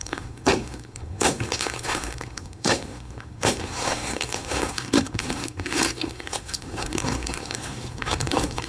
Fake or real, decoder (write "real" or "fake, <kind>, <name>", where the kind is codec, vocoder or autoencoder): fake, codec, SNAC